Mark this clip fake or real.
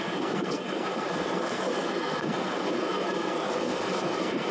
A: fake